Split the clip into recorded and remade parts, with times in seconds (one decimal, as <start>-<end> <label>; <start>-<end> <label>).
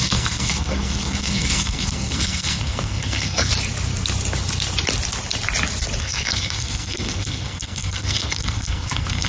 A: 0.0-3.5 remade; 3.5-6.0 recorded; 6.0-9.3 remade